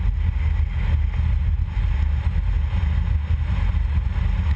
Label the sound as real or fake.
real